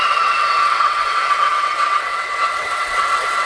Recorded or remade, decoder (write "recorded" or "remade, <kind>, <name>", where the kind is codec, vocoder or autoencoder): remade, vocoder, WaveNeXt